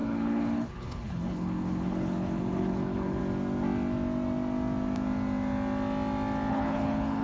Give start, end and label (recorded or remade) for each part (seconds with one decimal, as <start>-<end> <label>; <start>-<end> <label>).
0.0-3.2 remade; 3.2-6.5 recorded; 6.5-7.2 remade